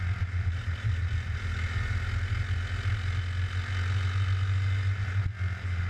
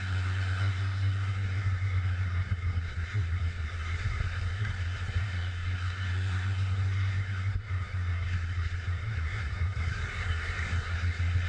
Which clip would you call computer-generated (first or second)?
second